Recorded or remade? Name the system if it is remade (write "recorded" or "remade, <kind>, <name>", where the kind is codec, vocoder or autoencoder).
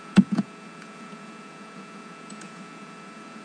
remade, vocoder, Vocos